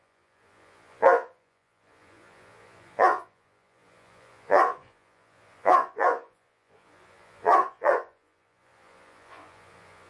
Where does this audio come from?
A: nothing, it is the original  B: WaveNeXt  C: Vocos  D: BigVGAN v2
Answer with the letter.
C